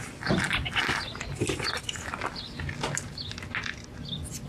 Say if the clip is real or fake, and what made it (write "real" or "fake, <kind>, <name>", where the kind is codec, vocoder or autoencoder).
real